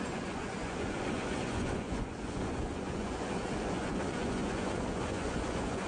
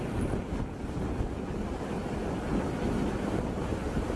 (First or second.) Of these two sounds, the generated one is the first